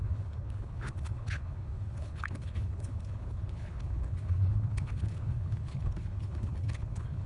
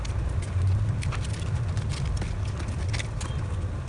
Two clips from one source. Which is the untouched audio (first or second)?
second